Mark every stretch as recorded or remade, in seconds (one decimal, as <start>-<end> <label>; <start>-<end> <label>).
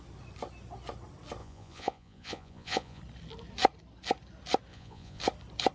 0.0-1.4 recorded; 1.4-3.0 remade; 3.0-4.7 recorded; 4.7-5.2 remade; 5.2-5.7 recorded